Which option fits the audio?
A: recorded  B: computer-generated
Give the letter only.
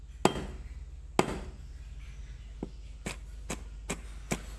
A